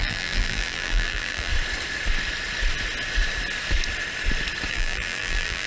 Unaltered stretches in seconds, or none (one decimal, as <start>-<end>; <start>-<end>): 1.5-4.7